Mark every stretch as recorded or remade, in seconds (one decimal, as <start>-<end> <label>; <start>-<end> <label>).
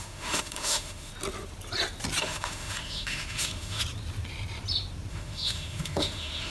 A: 0.0-1.1 remade; 1.1-2.2 recorded; 2.2-3.8 remade; 3.8-5.1 recorded; 5.1-6.5 remade